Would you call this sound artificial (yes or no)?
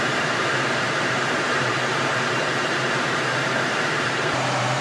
yes